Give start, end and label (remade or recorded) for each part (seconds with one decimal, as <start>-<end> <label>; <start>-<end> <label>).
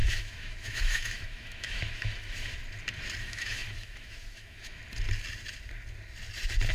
0.0-2.6 remade; 2.6-3.2 recorded; 3.2-4.8 remade; 4.8-6.7 recorded